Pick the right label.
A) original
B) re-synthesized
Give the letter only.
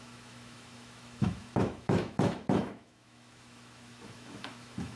B